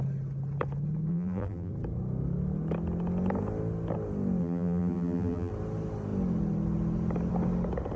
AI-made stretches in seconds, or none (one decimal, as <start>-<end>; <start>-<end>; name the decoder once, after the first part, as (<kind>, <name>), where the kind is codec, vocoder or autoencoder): 1.1-1.7 (vocoder, BigVGAN v2); 4.4-5.5

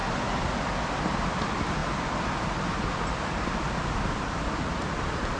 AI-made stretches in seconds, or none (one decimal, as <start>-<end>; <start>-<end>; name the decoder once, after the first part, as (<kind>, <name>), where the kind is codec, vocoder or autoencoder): none

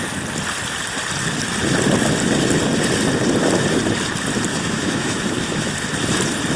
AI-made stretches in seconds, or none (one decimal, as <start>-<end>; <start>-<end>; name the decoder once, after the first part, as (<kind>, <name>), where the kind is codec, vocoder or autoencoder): 4.5-5.7 (autoencoder, DAC-VAE)

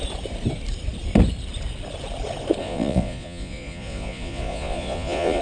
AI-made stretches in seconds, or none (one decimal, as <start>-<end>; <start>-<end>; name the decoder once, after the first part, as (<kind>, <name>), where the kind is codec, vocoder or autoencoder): 2.6-5.4 (vocoder, Vocos)

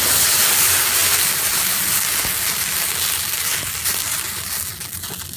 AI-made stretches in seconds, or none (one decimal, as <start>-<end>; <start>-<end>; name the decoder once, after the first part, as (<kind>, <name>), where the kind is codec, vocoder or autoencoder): none

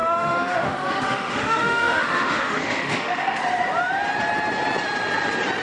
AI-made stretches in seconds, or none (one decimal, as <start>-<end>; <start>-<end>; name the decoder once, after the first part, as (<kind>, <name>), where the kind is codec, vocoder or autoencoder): 0.0-3.4 (autoencoder, DAC-VAE)

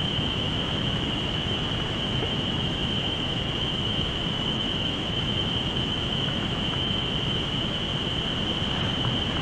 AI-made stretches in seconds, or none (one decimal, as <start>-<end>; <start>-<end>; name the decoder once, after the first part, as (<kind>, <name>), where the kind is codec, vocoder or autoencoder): 0.0-7.9 (autoencoder, DAC-VAE)

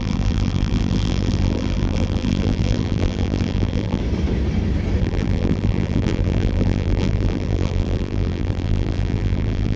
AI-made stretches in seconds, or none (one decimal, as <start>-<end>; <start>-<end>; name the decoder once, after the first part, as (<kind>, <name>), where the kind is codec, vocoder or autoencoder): 0.0-4.0 (vocoder, BigVGAN v2); 5.0-9.8